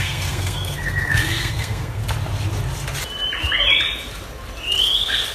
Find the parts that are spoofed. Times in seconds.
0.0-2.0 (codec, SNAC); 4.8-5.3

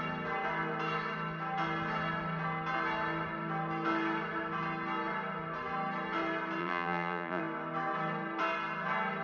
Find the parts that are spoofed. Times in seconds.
6.6-7.4 (vocoder, BigVGAN v2)

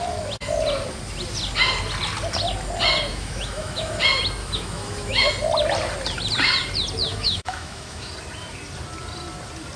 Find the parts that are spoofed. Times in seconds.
3.1-4.0 (autoencoder, DAC-VAE); 4.4-5.3; 7.1-8.1

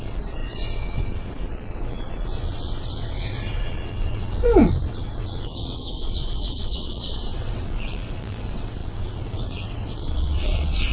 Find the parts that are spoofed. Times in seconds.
0.0-10.9 (vocoder, WaveNeXt)

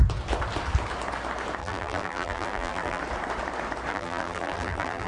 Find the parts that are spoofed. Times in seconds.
1.6-3.0 (vocoder, BigVGAN v2); 3.9-5.1